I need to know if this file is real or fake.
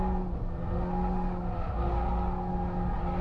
real